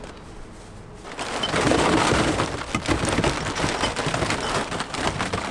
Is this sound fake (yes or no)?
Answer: no